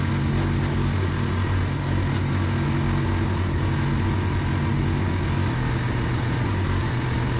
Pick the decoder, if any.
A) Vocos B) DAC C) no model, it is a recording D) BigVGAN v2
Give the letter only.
C